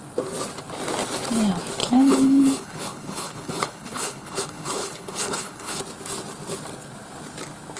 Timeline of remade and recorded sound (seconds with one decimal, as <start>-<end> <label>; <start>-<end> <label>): 0.0-1.8 recorded; 1.8-5.8 remade; 5.8-7.8 recorded

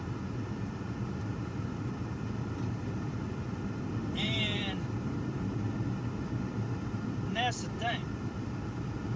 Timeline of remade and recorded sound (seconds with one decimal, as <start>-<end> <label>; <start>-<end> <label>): 0.0-4.0 recorded; 4.0-4.6 remade; 4.6-9.2 recorded

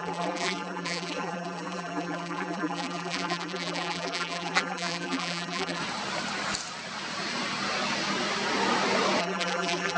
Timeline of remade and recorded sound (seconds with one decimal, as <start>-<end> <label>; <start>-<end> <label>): 0.0-5.8 remade; 5.8-9.2 recorded; 9.2-10.0 remade

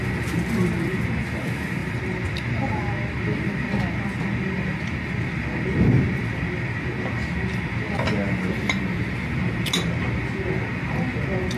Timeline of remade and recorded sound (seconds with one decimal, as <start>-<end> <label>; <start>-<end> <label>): 0.0-1.8 recorded; 1.8-2.9 remade; 2.9-11.6 recorded

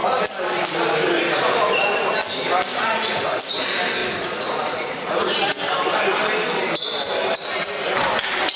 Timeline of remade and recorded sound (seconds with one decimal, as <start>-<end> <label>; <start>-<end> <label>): 0.0-2.7 recorded; 2.7-3.4 remade; 3.4-4.0 recorded; 4.0-5.5 remade; 5.5-8.6 recorded

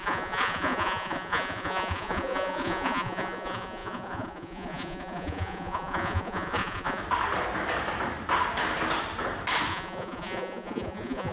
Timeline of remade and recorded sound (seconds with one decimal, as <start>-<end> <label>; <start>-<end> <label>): 0.0-7.0 remade; 7.0-9.7 recorded; 9.7-11.3 remade